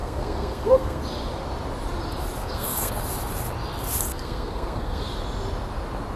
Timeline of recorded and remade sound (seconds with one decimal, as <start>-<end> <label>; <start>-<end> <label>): 0.0-1.0 remade; 1.0-2.4 recorded; 2.4-3.0 remade; 3.0-4.1 recorded; 4.1-5.0 remade; 5.0-6.2 recorded